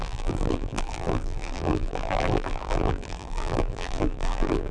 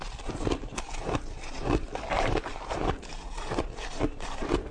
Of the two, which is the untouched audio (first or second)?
second